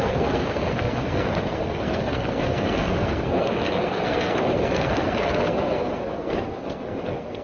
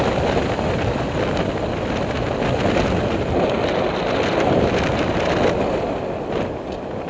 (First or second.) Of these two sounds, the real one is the second